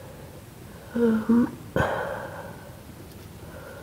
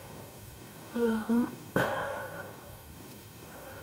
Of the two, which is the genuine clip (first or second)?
first